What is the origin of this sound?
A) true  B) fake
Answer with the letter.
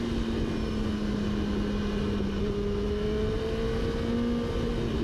A